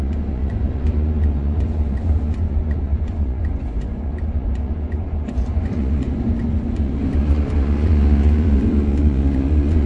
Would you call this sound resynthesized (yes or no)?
yes